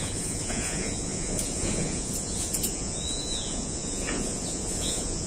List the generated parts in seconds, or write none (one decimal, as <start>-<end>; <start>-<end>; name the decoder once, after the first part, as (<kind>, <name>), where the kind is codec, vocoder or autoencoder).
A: 0.0-5.3 (vocoder, Vocos)